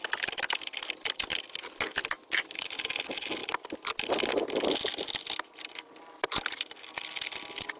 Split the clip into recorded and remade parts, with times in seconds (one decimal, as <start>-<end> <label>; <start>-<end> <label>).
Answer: 0.0-7.8 recorded